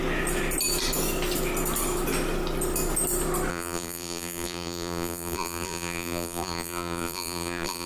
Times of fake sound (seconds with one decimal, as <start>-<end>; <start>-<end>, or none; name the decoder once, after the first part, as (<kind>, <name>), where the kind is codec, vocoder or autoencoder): 3.5-7.9 (vocoder, BigVGAN v2)

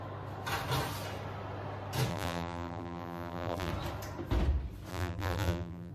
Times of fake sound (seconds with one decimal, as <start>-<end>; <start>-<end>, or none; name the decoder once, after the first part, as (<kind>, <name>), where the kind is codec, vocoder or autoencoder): 2.1-3.7 (vocoder, BigVGAN v2); 4.9-5.9

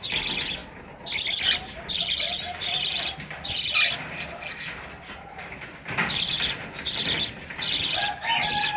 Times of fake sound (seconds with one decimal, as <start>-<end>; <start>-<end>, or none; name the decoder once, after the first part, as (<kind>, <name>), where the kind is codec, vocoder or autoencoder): 5.4-6.6 (vocoder, BigVGAN v2)